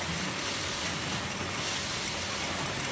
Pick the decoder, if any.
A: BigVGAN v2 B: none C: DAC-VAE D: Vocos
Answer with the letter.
B